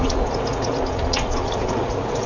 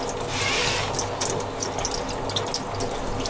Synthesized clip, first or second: first